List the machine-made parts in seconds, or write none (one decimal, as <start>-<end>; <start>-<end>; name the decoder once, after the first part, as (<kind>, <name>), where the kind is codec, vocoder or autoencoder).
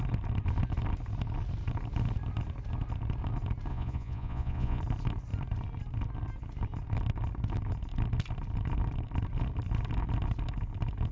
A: 3.7-4.8 (vocoder, Vocos)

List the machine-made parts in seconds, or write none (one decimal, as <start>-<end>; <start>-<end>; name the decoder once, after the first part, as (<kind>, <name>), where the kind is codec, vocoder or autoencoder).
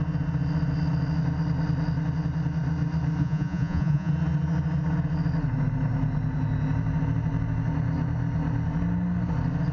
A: 3.2-4.1 (vocoder, Vocos)